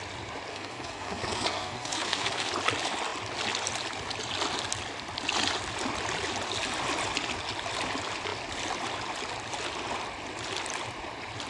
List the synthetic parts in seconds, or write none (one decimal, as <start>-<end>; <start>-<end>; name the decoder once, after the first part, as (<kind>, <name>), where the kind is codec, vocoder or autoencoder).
0.5-2.5 (codec, SNAC)